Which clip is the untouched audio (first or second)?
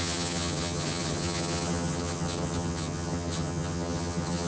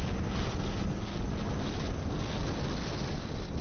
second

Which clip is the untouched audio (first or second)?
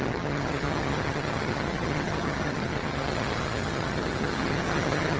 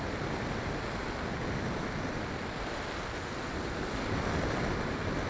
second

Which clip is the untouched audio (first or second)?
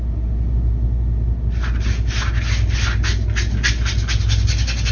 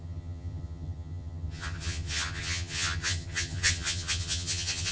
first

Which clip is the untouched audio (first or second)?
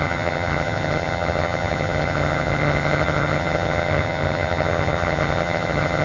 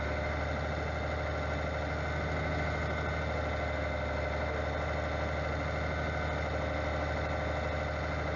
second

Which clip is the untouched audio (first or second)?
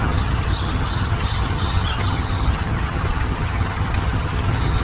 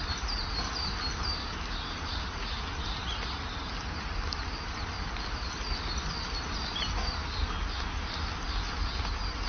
second